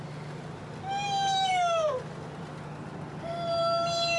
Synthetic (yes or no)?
no